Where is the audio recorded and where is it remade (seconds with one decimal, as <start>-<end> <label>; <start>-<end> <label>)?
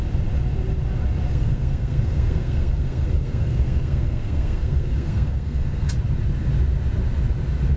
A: 0.0-1.3 recorded; 1.3-5.9 remade; 5.9-7.8 recorded